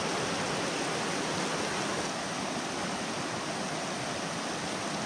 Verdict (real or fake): real